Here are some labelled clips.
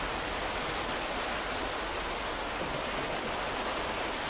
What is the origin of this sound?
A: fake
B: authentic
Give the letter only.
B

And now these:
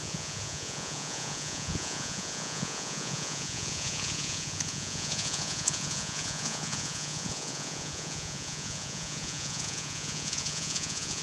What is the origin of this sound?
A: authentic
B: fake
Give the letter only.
B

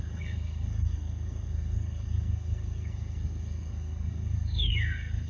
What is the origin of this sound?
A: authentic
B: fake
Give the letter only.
B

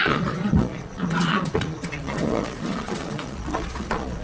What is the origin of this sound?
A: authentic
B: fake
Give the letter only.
B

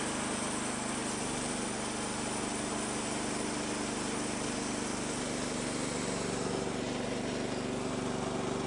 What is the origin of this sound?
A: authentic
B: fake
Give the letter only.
A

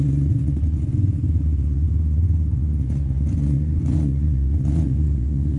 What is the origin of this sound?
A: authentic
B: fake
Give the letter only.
B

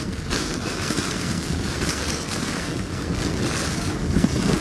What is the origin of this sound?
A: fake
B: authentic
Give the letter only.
A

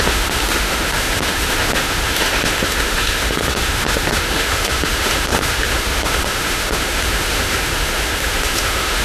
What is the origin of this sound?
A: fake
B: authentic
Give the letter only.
A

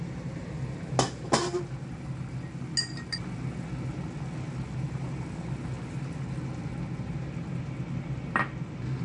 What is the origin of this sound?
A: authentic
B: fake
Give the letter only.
A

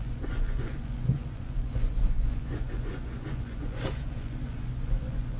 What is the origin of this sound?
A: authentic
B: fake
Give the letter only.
B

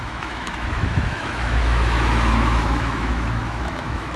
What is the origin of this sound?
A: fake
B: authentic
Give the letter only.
A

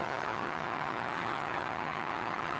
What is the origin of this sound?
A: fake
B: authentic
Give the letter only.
A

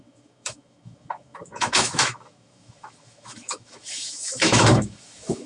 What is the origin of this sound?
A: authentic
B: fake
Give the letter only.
B